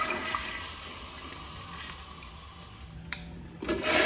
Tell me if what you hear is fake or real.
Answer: real